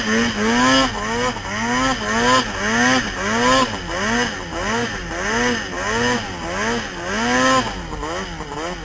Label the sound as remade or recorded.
recorded